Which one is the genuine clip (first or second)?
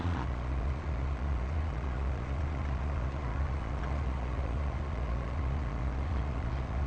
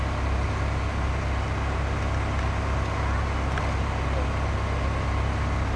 second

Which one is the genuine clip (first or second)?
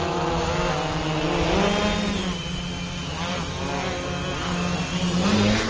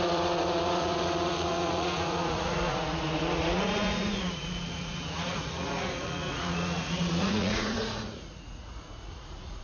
first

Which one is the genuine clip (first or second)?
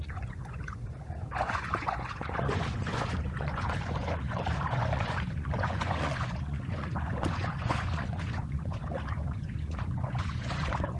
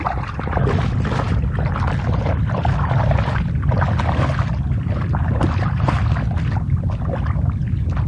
second